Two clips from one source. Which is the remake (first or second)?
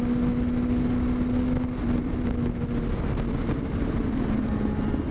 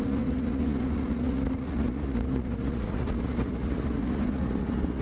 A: second